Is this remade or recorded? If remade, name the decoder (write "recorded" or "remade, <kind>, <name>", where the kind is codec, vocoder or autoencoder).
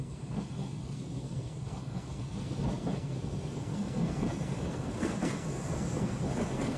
remade, codec, SNAC